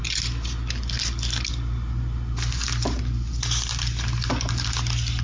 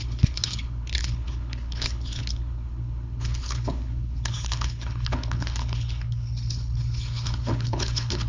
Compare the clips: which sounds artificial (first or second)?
second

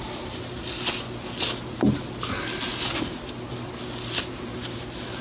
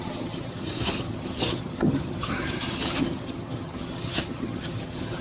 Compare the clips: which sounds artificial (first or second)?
second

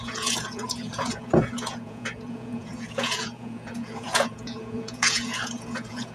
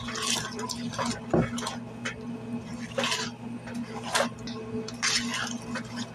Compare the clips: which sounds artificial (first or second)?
first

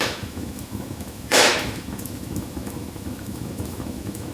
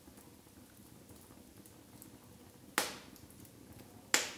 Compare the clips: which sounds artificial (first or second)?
first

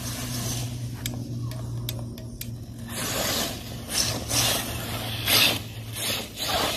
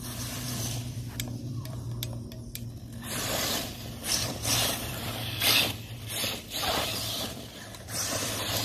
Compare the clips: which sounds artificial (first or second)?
second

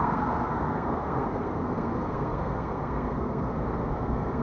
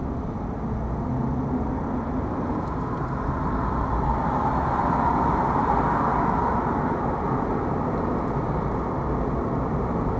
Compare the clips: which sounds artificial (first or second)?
first